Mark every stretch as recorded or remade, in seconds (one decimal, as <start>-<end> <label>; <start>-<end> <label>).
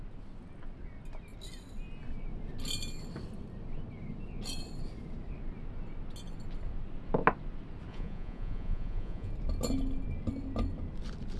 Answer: 0.0-7.9 recorded; 7.9-9.3 remade; 9.3-11.4 recorded